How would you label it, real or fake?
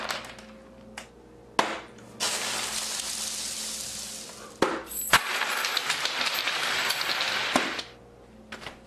real